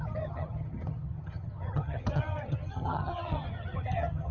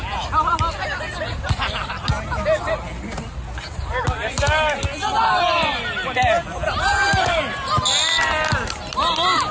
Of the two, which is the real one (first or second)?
second